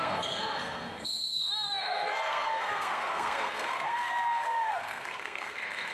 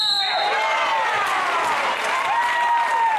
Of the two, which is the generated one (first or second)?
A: first